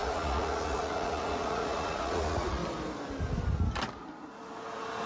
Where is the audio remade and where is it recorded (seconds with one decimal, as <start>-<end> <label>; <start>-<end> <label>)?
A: 0.0-2.6 remade; 2.6-5.1 recorded